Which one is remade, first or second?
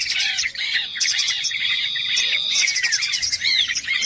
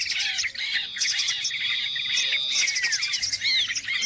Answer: first